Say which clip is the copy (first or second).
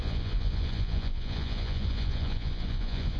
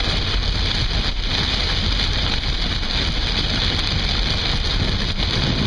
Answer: first